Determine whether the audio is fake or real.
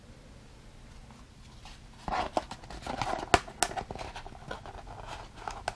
real